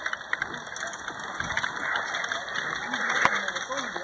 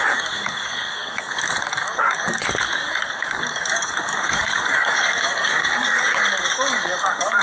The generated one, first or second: second